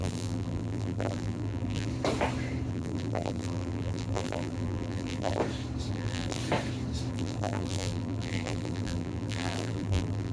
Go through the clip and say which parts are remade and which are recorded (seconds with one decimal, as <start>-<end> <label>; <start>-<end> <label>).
0.0-1.9 remade; 1.9-2.7 recorded; 2.7-5.4 remade; 5.4-5.9 recorded; 5.9-6.4 remade; 6.4-7.1 recorded; 7.1-10.3 remade